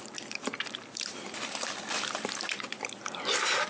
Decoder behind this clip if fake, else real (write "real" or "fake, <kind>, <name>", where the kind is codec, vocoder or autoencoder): fake, vocoder, BigVGAN v2